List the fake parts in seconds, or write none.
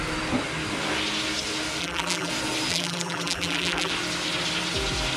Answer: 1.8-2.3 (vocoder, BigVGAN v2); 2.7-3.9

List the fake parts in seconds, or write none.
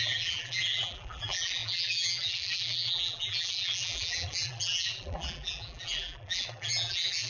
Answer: 0.0-7.3 (vocoder, BigVGAN v2)